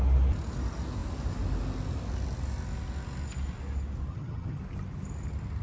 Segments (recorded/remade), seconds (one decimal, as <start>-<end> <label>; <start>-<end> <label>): 0.0-4.1 recorded; 4.1-4.6 remade; 4.6-5.6 recorded